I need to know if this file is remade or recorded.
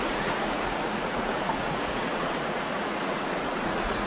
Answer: remade